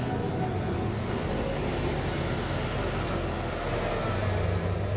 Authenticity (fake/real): real